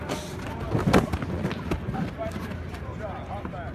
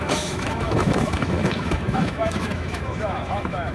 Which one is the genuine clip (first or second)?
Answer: first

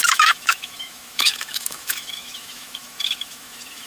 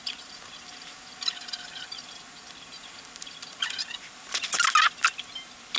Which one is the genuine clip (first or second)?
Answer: second